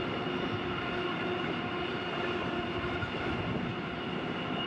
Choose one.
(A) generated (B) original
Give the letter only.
B